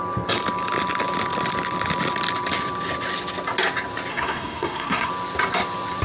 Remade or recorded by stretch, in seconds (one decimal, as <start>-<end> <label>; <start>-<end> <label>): 0.0-4.1 recorded; 4.1-5.1 remade; 5.1-6.0 recorded